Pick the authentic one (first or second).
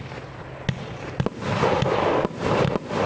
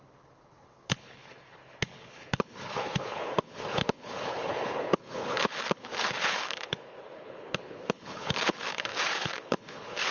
first